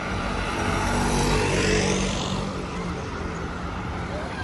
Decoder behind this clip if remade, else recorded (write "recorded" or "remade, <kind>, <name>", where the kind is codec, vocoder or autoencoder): remade, vocoder, BigVGAN v2